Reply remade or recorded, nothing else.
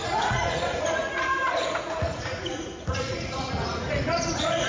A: remade